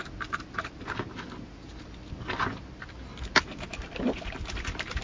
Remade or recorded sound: recorded